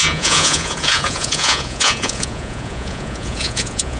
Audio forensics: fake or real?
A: fake